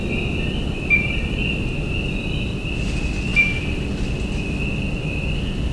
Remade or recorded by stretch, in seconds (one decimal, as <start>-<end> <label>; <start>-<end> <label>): 0.0-5.7 recorded